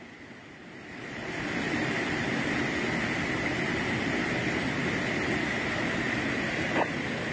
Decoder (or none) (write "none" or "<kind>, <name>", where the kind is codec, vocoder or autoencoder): none